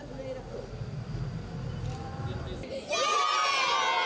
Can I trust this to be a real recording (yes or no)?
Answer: yes